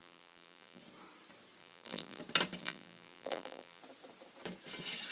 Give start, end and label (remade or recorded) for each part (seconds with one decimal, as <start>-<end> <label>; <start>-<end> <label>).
0.0-0.8 remade; 0.8-1.6 recorded; 1.6-2.2 remade; 2.2-2.6 recorded; 2.6-3.8 remade; 3.8-5.1 recorded